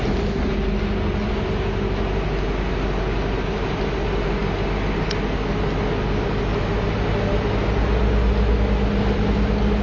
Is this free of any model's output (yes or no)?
yes